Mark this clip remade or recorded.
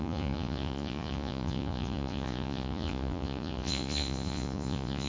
remade